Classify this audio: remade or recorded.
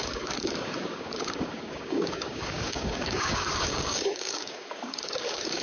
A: remade